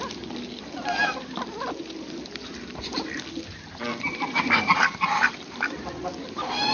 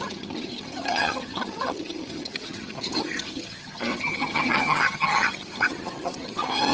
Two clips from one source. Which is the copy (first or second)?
second